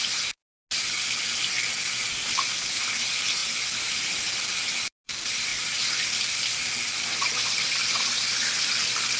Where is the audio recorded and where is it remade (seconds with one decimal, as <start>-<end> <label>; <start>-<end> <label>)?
0.0-9.2 recorded